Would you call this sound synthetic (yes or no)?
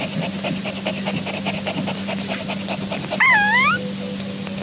no